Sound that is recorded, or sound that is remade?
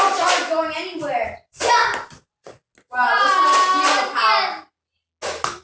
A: recorded